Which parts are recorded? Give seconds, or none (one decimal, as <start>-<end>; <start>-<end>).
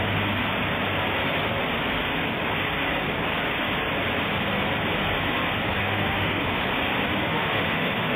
0.0-5.8; 6.4-7.3